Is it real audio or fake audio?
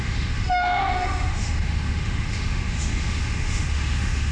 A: fake